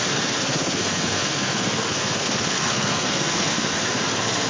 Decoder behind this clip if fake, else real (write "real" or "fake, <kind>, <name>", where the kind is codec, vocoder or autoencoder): fake, codec, SNAC